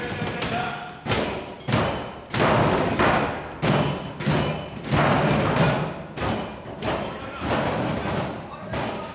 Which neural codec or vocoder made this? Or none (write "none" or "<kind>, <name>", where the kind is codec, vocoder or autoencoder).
none